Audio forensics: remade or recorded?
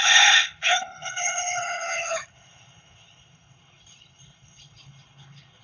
remade